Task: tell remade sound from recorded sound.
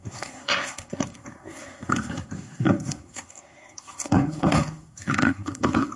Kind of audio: remade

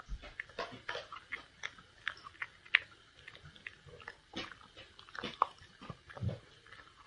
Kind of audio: recorded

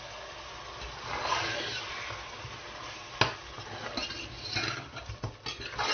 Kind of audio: recorded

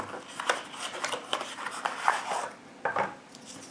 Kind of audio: recorded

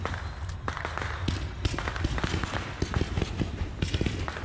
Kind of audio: recorded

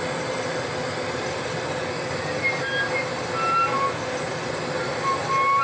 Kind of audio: recorded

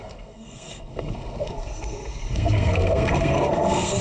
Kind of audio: remade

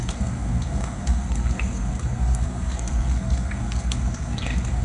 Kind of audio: remade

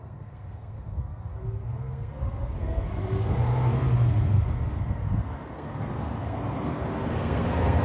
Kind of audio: remade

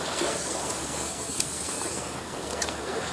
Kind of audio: remade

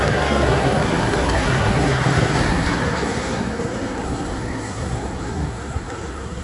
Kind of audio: remade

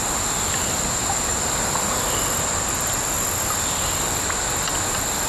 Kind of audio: recorded